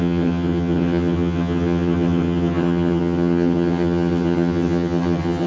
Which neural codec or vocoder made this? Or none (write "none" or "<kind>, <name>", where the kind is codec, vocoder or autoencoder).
vocoder, HiFi-GAN